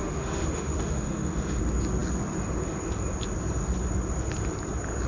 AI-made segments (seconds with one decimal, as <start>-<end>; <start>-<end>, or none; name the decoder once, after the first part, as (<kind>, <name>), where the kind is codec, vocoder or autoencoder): 0.0-1.6 (autoencoder, DAC-VAE)